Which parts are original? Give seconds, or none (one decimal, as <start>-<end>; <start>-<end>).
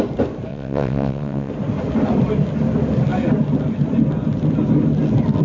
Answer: 0.0-0.5; 1.5-5.4